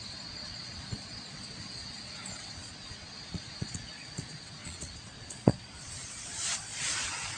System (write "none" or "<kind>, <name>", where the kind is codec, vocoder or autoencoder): vocoder, Vocos